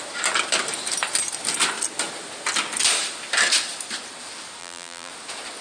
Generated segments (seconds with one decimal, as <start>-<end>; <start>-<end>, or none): 4.6-5.1